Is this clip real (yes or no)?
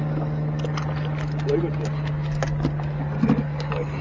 yes